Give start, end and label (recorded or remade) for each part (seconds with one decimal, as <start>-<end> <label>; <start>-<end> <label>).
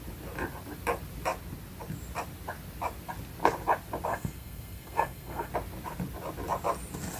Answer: 0.0-4.1 recorded; 4.1-5.5 remade; 5.5-7.2 recorded